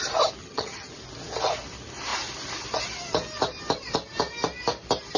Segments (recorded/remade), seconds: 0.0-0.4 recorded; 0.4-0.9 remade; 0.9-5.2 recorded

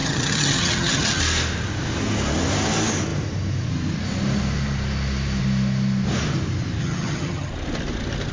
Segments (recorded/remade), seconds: 0.0-1.2 remade; 1.2-6.8 recorded; 6.8-7.5 remade; 7.5-8.3 recorded

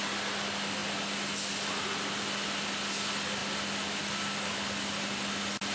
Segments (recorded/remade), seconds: 0.0-5.7 recorded

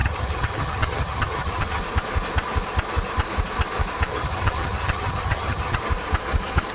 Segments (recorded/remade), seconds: 0.0-1.8 remade; 1.8-4.1 recorded; 4.1-5.8 remade; 5.8-6.7 recorded

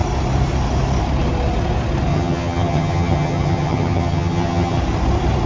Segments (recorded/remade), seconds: 0.0-2.1 recorded; 2.1-4.8 remade; 4.8-5.5 recorded

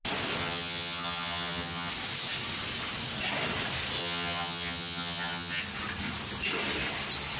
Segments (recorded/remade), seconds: 0.0-0.4 recorded; 0.4-1.9 remade; 1.9-4.0 recorded; 4.0-5.6 remade; 5.6-7.4 recorded